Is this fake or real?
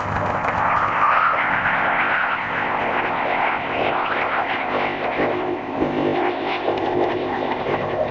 fake